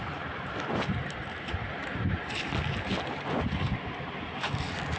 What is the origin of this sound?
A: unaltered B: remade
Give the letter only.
A